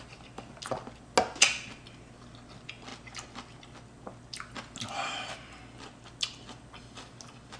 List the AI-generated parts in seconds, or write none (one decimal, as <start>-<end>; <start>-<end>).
none